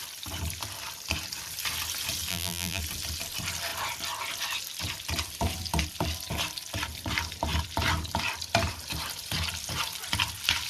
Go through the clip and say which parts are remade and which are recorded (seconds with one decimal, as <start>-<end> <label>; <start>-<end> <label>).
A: 0.0-2.3 recorded; 2.3-2.8 remade; 2.8-10.7 recorded